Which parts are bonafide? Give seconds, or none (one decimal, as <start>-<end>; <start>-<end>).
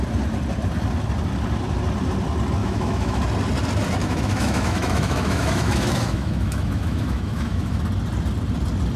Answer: 0.0-2.6; 3.2-4.0; 7.8-9.0